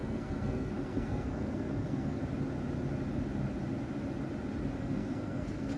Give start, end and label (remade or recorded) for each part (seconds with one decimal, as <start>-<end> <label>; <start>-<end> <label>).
0.0-2.2 remade; 2.2-4.8 recorded; 4.8-5.8 remade